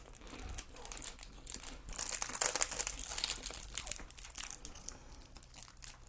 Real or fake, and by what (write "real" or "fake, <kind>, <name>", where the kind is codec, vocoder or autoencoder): real